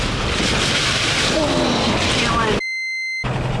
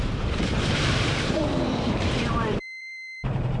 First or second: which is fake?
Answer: second